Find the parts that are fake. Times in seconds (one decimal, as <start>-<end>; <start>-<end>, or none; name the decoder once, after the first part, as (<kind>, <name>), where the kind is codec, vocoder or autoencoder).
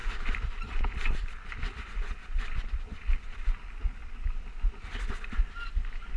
0.0-3.0 (vocoder, BigVGAN v2)